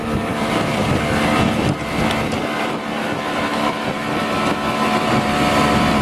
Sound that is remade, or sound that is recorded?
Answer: recorded